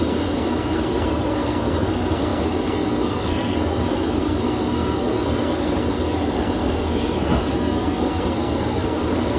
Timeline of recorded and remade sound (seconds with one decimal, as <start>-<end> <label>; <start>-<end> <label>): 0.0-9.4 remade